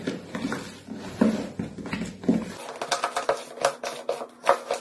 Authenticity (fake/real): real